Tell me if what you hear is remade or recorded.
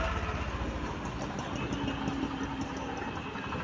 recorded